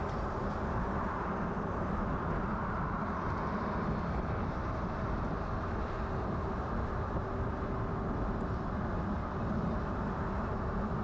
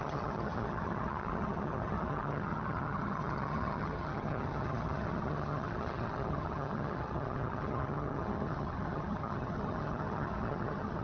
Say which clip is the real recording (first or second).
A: first